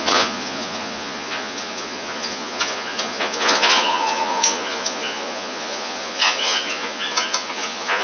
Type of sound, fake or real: fake